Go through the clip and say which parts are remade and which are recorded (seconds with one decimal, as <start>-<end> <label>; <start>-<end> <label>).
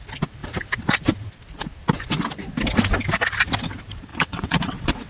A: 0.0-4.1 recorded; 4.1-5.1 remade